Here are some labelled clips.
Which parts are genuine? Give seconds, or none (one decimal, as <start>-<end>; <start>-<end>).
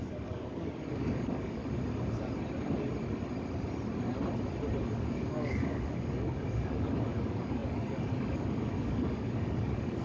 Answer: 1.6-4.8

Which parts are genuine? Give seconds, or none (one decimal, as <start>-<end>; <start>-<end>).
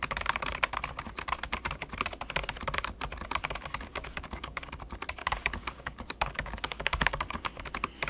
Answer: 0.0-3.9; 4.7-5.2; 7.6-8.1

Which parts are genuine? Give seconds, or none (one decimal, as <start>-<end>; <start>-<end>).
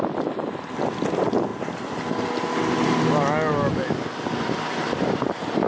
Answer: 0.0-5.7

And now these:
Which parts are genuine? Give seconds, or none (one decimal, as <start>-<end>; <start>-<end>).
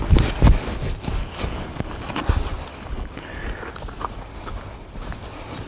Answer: 0.0-1.2; 2.2-2.7; 3.7-5.7